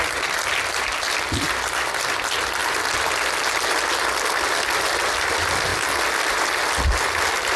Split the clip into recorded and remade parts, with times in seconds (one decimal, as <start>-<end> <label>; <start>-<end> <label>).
0.0-2.6 remade; 2.6-5.0 recorded; 5.0-5.7 remade; 5.7-6.4 recorded; 6.4-7.6 remade